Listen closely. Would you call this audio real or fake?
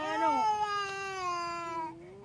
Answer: real